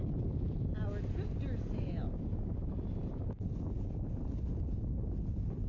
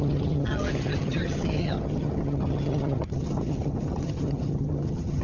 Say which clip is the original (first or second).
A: first